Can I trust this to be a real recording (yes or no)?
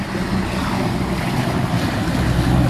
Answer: yes